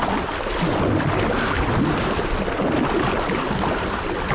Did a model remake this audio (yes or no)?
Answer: no